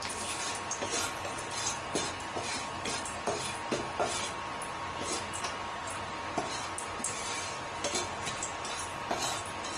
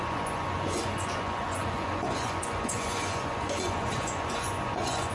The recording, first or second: first